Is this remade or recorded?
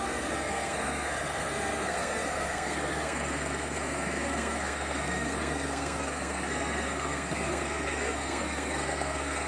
remade